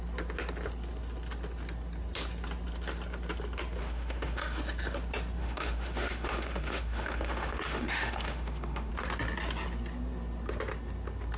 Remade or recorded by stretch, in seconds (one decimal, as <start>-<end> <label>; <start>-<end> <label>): 0.0-3.8 recorded; 3.8-4.4 remade; 4.4-5.4 recorded; 5.4-8.9 remade; 8.9-11.4 recorded